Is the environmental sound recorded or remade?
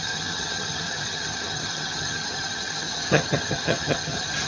remade